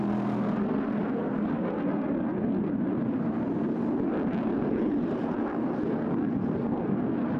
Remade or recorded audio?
recorded